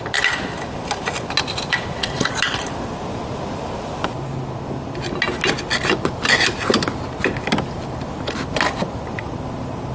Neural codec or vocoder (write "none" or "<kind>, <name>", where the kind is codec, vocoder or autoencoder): none